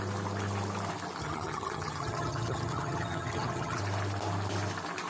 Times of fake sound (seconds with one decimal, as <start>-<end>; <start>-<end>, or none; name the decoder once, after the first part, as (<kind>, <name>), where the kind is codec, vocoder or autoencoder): 1.2-3.8 (vocoder, HiFi-GAN)